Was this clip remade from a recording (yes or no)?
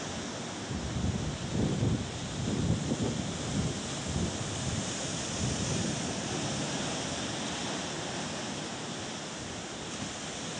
no